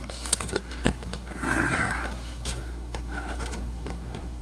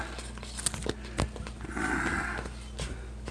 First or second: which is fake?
first